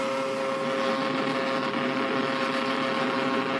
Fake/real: real